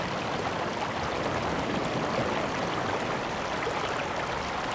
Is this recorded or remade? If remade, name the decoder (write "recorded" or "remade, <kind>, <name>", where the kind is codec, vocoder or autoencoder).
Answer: recorded